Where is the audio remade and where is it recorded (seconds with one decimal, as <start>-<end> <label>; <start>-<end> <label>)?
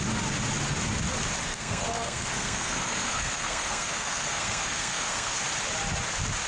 0.0-1.5 recorded; 1.5-5.4 remade; 5.4-6.5 recorded